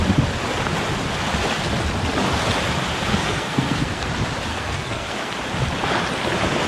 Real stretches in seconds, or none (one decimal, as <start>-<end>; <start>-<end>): 0.0-3.1; 4.1-4.5; 5.3-6.7